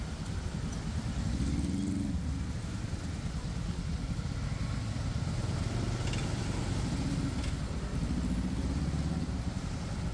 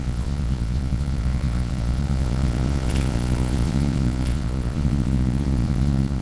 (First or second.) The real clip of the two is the first